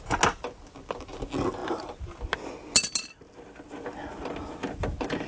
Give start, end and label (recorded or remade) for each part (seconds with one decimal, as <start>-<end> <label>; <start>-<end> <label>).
0.0-5.3 recorded